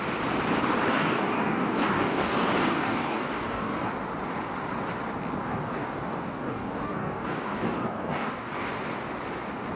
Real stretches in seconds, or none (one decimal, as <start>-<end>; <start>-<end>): 0.0-0.9; 3.9-5.4; 8.7-9.8